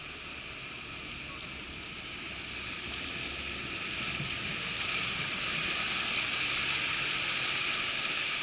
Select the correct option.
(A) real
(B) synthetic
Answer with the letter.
A